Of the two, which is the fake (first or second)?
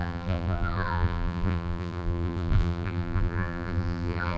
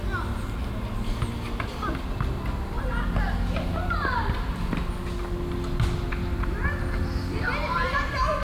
first